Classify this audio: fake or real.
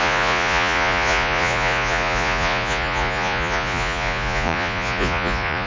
fake